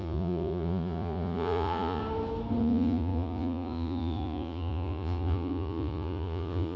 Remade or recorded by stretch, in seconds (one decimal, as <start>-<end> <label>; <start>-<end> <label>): 0.0-2.0 remade; 2.0-2.6 recorded; 2.6-6.8 remade